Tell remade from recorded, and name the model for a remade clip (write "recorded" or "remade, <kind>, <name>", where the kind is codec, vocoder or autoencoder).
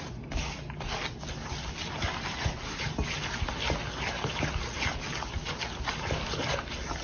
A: recorded